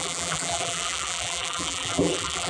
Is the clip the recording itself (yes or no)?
no